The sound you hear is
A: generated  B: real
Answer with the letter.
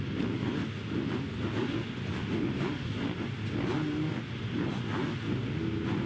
B